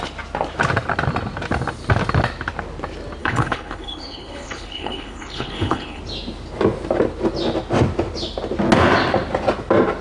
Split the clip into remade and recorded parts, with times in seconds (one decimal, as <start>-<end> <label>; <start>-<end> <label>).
0.0-3.2 recorded; 3.2-6.0 remade; 6.0-10.0 recorded